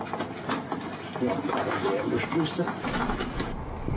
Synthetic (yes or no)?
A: no